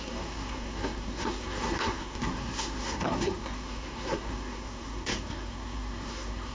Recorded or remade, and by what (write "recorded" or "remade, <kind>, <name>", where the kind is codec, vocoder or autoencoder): remade, codec, SNAC